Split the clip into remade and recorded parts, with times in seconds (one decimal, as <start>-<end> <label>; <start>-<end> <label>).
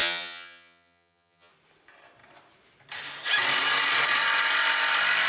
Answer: 0.0-1.5 remade; 1.5-5.3 recorded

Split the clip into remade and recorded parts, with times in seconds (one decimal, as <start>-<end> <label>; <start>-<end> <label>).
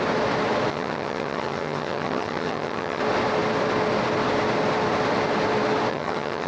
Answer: 0.0-0.7 recorded; 0.7-3.0 remade; 3.0-5.9 recorded; 5.9-6.5 remade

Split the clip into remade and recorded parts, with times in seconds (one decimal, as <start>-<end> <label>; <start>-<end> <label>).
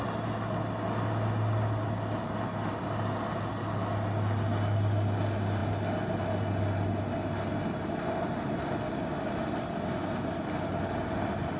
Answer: 0.0-11.6 recorded